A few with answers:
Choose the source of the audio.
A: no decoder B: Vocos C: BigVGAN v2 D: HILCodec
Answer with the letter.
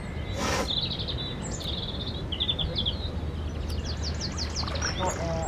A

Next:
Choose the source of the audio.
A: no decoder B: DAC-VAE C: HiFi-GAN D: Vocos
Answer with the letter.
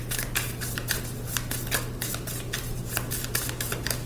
A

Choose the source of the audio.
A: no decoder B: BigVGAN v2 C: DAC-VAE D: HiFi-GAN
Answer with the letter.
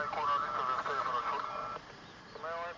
A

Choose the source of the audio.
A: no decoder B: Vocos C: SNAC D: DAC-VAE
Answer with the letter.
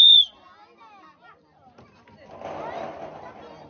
A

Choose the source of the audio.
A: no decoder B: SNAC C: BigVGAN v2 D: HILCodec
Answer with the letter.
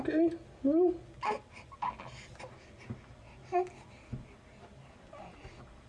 A